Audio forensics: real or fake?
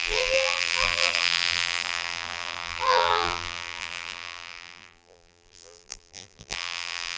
fake